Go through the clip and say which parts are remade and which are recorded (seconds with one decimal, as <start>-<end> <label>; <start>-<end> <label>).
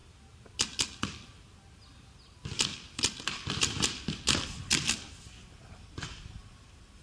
0.0-7.0 recorded